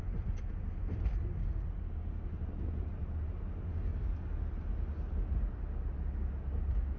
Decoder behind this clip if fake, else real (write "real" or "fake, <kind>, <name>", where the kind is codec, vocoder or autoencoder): real